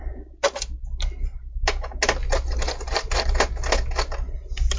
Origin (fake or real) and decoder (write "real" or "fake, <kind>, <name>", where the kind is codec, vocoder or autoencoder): real